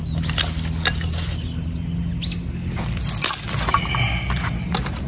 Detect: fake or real real